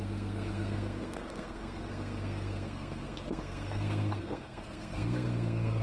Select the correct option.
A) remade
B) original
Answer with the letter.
A